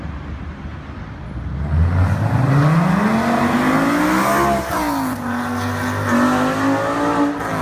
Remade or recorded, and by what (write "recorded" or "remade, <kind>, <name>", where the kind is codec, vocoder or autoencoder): recorded